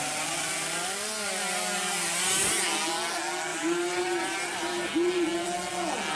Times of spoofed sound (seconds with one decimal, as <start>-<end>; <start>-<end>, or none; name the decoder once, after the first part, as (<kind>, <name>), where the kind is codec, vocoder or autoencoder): 3.5-4.9 (vocoder, BigVGAN v2)